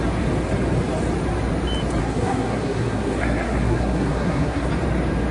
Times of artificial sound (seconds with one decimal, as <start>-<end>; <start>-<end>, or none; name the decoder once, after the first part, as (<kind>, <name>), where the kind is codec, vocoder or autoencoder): 2.0-4.7 (codec, SNAC)